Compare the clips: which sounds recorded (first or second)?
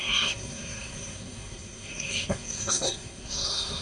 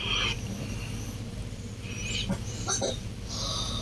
second